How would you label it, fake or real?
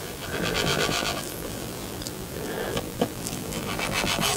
fake